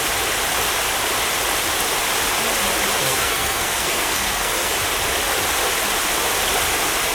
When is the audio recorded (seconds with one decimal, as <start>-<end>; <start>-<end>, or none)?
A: 0.0-3.0; 4.7-7.1